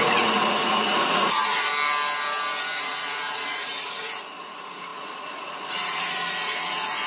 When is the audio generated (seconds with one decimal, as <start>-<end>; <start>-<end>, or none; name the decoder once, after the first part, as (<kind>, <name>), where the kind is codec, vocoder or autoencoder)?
0.0-1.7 (vocoder, Vocos); 2.8-7.1